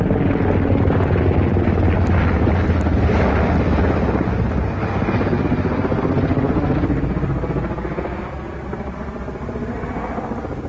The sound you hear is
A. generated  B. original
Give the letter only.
B